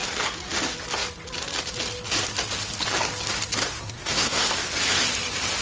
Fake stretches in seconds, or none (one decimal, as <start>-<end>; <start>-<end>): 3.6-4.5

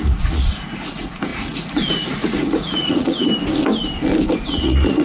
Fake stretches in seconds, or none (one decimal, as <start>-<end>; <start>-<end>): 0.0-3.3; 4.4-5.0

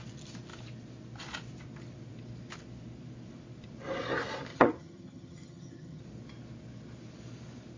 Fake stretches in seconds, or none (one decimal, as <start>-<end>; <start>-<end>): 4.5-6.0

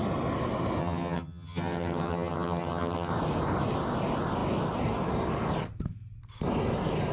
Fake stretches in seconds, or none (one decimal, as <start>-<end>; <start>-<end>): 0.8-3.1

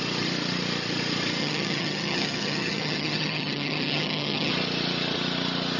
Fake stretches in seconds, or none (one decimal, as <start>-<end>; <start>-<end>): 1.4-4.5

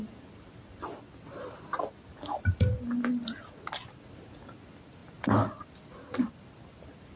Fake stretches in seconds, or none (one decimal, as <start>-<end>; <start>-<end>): none

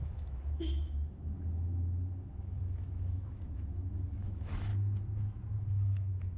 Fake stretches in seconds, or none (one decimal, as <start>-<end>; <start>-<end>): 0.0-4.7; 5.7-6.4

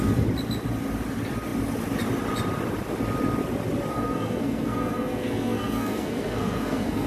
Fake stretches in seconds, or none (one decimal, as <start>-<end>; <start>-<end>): 3.9-7.1